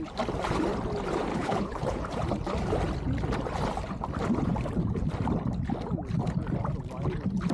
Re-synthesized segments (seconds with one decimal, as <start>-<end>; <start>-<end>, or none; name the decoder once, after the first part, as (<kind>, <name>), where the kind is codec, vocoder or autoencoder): 1.3-2.0 (codec, HILCodec)